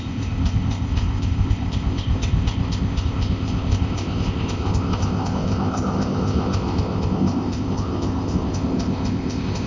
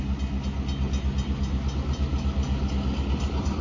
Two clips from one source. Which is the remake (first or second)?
first